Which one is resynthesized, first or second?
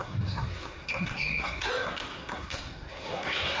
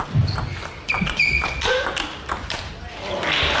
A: first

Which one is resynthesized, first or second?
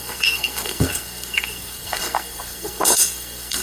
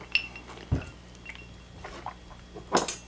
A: first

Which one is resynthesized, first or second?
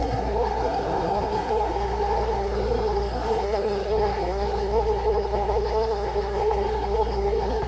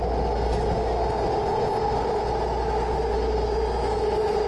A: first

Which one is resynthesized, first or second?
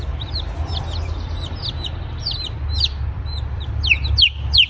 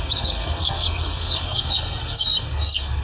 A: second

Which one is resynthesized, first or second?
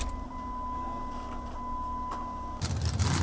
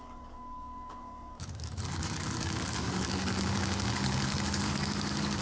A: second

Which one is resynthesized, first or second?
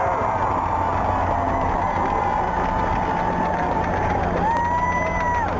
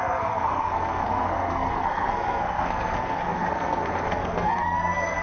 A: second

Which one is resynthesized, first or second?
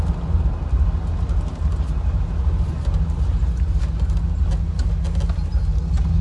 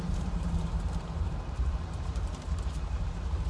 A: second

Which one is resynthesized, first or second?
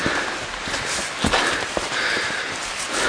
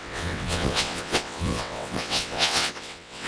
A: second